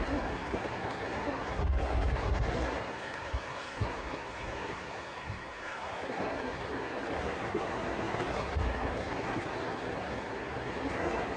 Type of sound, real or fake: fake